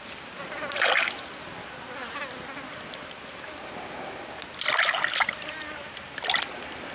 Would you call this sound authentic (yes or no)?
yes